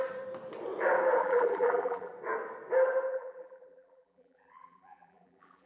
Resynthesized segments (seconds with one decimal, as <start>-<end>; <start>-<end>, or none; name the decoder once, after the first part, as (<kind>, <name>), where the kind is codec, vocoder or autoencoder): 1.2-2.1 (vocoder, BigVGAN v2); 3.1-5.7